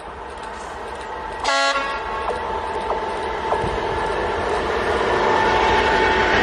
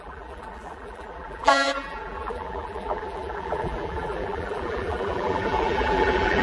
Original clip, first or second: first